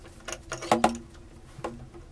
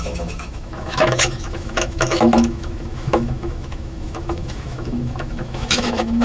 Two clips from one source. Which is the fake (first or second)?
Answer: second